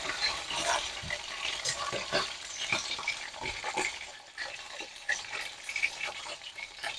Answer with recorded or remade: remade